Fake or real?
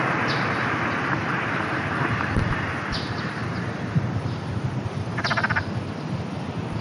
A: fake